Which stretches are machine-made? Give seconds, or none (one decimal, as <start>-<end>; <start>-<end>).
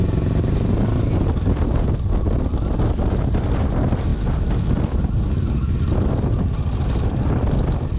none